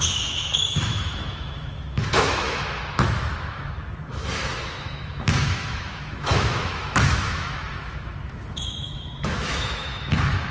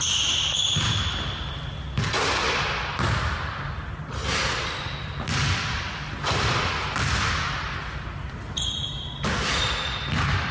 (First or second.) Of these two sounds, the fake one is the first